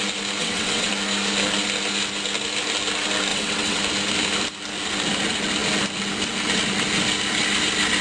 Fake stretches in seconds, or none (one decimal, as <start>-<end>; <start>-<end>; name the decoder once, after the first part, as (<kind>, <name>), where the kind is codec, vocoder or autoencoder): 0.4-0.9 (vocoder, WaveNeXt); 3.3-3.8